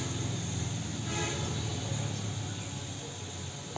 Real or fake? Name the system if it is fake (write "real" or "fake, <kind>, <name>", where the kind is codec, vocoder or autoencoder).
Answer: real